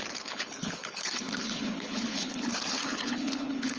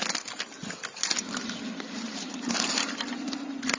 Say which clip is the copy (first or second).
first